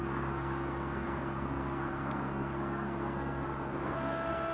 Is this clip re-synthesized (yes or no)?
yes